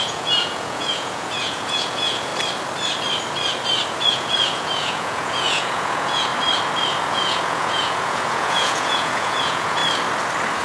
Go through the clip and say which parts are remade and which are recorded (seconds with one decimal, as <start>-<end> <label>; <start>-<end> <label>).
0.0-2.3 remade; 2.3-4.0 recorded; 4.0-6.3 remade; 6.3-7.0 recorded; 7.0-9.8 remade; 9.8-10.6 recorded